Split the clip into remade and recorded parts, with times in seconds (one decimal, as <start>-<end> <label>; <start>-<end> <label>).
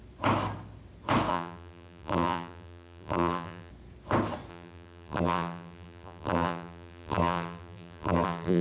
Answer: 0.0-1.3 recorded; 1.3-3.7 remade; 3.7-4.5 recorded; 4.5-8.6 remade